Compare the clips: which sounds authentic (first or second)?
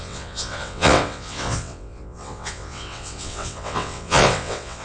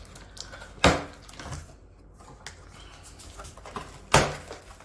second